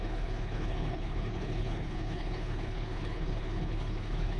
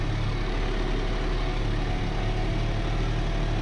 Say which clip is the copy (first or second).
first